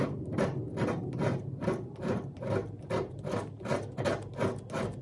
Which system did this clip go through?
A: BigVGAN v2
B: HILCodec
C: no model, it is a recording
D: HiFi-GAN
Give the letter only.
C